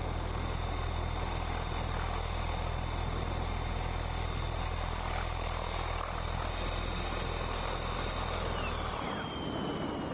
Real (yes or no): yes